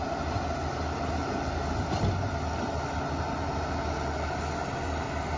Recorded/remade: recorded